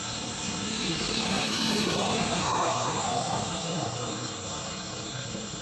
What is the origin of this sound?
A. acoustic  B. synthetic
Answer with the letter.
B